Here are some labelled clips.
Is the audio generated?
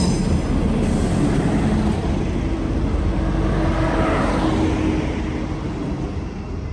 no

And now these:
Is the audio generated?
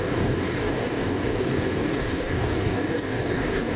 yes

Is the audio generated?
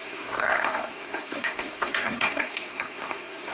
yes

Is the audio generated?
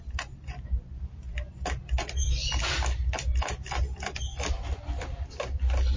no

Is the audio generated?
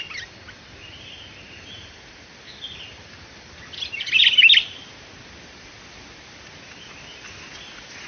no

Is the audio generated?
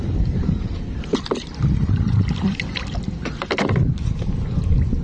yes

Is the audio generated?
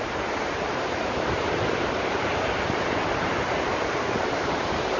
yes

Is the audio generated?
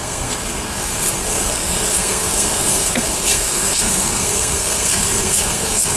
yes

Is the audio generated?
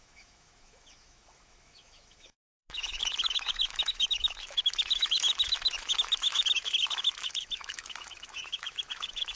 yes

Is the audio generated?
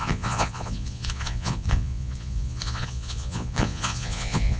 yes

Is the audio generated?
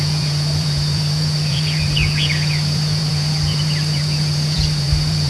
yes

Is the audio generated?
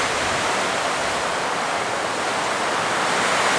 no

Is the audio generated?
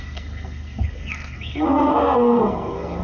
yes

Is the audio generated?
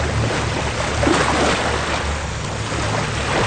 no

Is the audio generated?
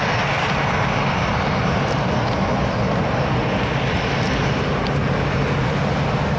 no